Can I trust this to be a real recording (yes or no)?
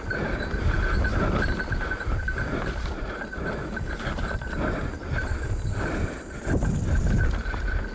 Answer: yes